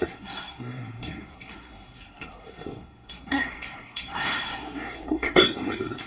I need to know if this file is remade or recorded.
remade